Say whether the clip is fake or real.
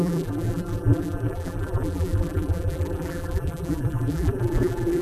fake